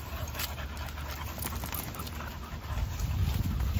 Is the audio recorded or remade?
recorded